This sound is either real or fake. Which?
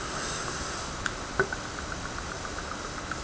real